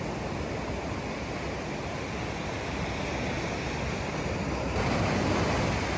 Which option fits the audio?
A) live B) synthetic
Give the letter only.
A